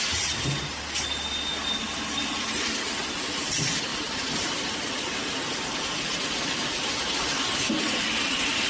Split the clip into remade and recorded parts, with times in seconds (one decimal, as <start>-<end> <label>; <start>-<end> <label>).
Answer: 0.0-8.7 recorded

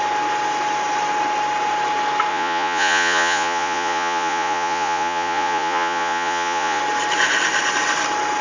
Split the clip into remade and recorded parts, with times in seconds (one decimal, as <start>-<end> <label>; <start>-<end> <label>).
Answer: 0.0-2.3 recorded; 2.3-6.8 remade; 6.8-8.4 recorded

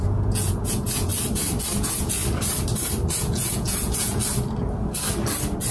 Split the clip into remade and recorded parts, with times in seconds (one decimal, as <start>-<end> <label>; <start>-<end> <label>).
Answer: 0.0-1.1 remade; 1.1-1.8 recorded; 1.8-2.2 remade; 2.2-3.2 recorded; 3.2-4.2 remade; 4.2-5.7 recorded

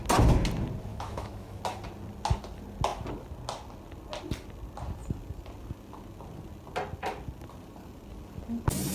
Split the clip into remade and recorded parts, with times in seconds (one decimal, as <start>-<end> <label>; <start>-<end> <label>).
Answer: 0.0-0.9 recorded; 0.9-1.6 remade; 1.6-8.9 recorded

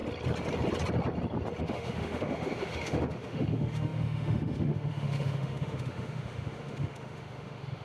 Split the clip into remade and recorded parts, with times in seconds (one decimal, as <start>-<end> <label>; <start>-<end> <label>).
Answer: 0.0-1.6 recorded; 1.6-7.8 remade